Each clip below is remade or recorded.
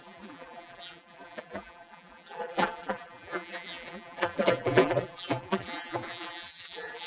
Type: remade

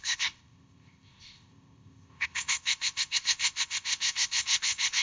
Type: remade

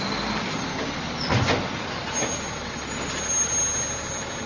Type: recorded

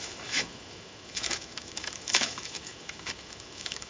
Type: remade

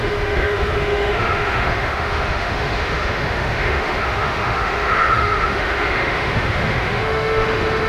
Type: remade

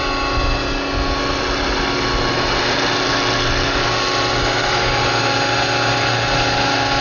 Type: recorded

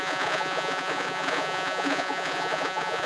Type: remade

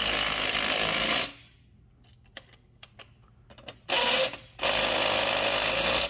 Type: recorded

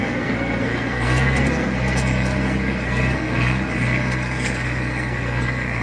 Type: remade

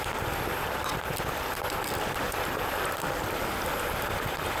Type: recorded